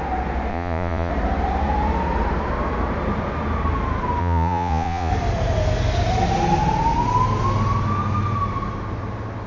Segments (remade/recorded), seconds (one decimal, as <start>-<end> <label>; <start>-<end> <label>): 0.0-0.5 recorded; 0.5-1.1 remade; 1.1-4.2 recorded; 4.2-5.1 remade; 5.1-9.5 recorded